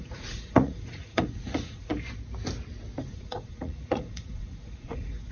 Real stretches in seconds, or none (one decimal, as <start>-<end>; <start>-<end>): 1.9-3.0

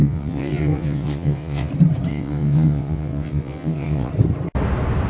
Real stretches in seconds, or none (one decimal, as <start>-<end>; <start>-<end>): 1.7-2.1; 4.1-5.1